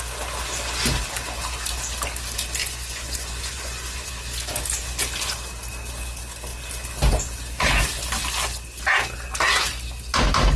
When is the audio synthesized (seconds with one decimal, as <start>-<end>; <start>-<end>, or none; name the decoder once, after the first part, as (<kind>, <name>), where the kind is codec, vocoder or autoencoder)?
2.6-4.1 (vocoder, Vocos)